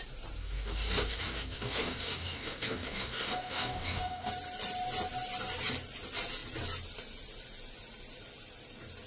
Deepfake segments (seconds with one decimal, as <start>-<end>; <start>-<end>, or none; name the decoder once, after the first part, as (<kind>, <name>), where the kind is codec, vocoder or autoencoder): 0.4-4.3 (codec, DAC)